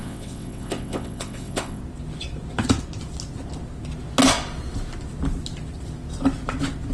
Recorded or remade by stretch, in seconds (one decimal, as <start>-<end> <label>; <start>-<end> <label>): 0.0-1.8 remade; 1.8-6.9 recorded